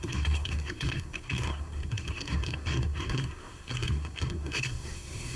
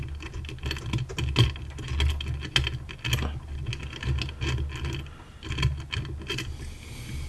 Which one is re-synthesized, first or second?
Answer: first